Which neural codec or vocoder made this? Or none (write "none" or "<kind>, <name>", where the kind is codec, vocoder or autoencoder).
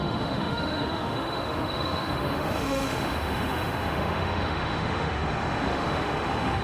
autoencoder, DAC-VAE